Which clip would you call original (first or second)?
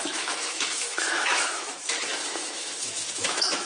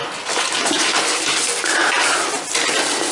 second